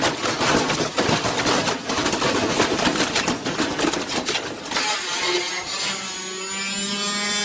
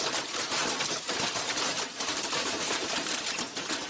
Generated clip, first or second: second